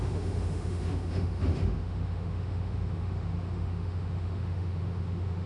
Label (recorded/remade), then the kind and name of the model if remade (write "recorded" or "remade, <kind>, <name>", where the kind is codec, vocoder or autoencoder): remade, autoencoder, DAC-VAE